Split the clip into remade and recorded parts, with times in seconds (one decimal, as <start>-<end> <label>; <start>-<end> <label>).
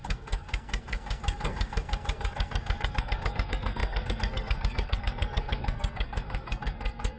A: 0.0-7.2 remade